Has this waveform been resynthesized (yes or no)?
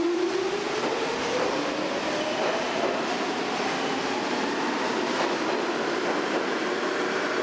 no